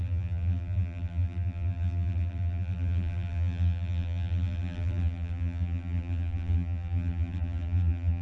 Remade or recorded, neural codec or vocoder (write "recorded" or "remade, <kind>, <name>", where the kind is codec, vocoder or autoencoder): remade, vocoder, BigVGAN v2